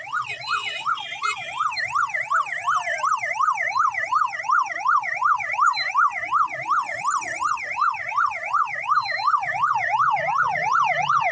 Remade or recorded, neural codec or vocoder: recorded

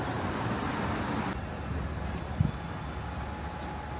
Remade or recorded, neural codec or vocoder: recorded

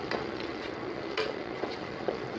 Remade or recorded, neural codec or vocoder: remade, vocoder, Vocos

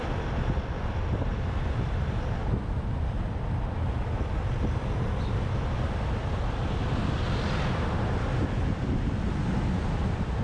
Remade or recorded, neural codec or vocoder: recorded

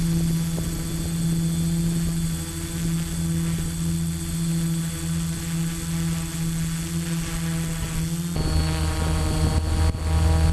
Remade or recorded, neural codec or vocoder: recorded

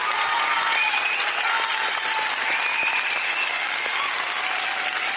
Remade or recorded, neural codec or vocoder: recorded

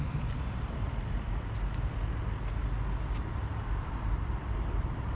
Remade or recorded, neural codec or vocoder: recorded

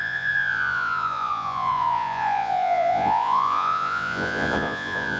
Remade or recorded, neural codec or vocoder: remade, vocoder, Vocos